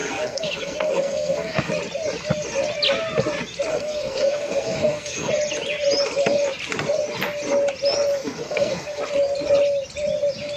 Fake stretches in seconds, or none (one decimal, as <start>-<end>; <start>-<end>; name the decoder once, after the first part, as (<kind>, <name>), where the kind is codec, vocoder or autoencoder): 0.0-1.7 (codec, SNAC); 3.7-5.3; 8.1-9.0